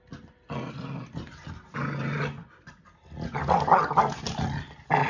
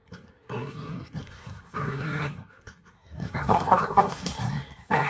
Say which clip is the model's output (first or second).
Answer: second